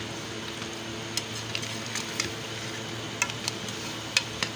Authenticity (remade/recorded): recorded